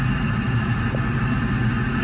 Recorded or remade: recorded